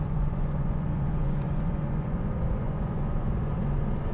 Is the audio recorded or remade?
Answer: remade